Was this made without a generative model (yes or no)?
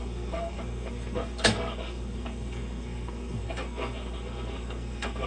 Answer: no